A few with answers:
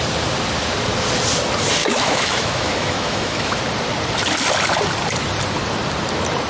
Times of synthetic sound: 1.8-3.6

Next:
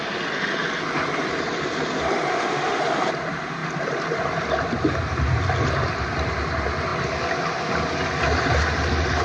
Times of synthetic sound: 2.3-2.8

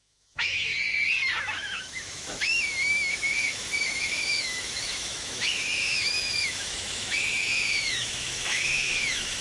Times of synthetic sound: 0.0-0.7; 1.4-9.4

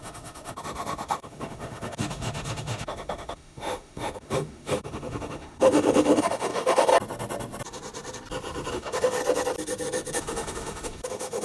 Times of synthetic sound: 0.0-6.9; 8.7-9.2; 10.1-11.4

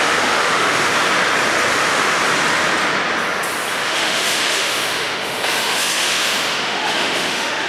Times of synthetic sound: 0.0-0.9; 1.7-2.2; 3.7-7.7

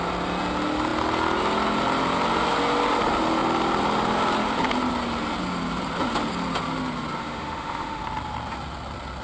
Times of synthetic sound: 7.2-8.0

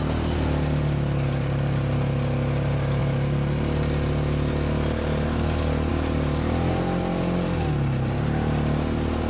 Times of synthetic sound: none

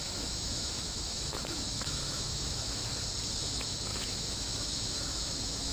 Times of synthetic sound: 0.0-2.8; 3.4-5.7